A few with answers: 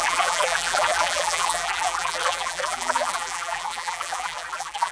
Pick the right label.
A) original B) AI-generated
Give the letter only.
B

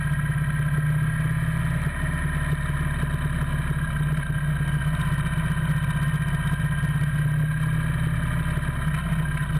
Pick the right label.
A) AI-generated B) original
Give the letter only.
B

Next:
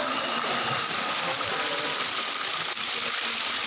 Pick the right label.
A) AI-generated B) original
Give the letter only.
B